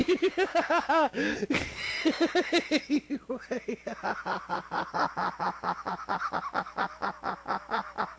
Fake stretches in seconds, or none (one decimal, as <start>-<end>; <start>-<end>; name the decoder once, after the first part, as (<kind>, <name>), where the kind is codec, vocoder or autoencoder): 0.0-1.3 (codec, DAC)